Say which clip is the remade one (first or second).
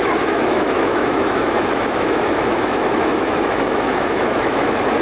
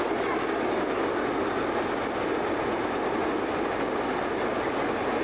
first